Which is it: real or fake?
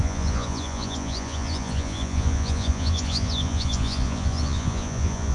fake